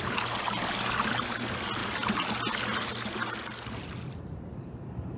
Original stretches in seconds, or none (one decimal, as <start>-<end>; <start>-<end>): 0.0-5.2